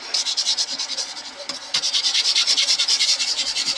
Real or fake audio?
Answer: fake